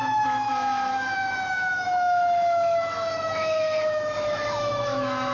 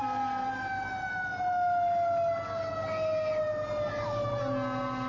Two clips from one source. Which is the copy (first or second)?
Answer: first